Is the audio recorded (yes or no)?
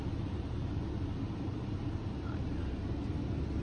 yes